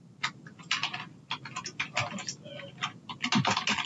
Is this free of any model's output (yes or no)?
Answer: yes